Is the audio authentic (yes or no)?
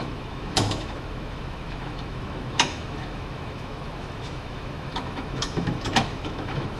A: no